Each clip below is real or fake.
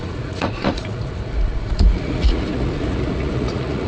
fake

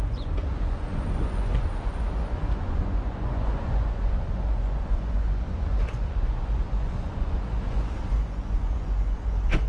fake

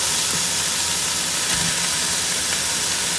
real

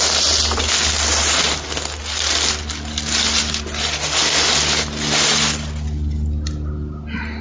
real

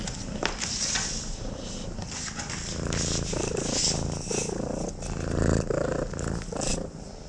real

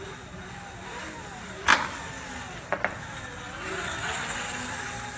real